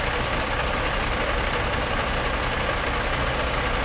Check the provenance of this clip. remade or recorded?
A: recorded